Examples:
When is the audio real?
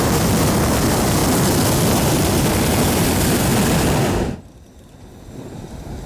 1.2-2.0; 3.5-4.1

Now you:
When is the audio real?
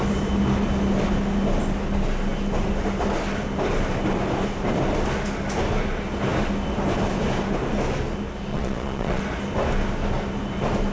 0.0-8.5; 9.2-10.9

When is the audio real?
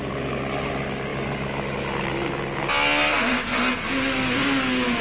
0.0-5.0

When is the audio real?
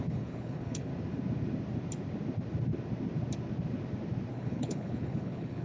0.9-4.3